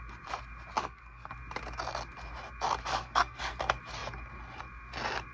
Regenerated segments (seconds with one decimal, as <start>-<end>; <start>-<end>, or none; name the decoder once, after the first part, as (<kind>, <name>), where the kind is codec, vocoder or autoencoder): 0.8-1.3 (codec, SNAC); 2.9-3.6